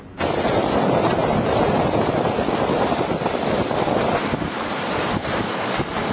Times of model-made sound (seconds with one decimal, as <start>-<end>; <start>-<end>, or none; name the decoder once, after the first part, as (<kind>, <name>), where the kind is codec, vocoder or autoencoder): none